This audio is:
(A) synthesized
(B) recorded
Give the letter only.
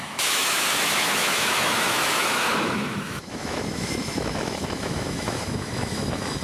A